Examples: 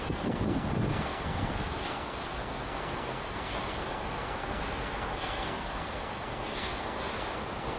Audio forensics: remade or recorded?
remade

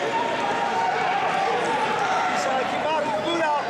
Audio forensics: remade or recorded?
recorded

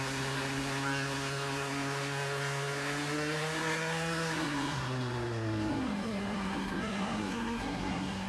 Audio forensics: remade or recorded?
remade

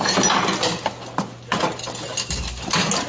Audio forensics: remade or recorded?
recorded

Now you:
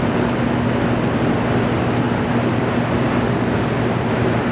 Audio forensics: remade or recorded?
recorded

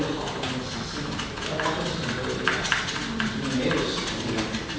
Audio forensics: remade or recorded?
recorded